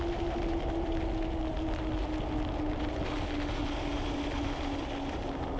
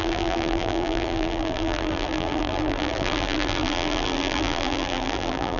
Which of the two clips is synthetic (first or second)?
second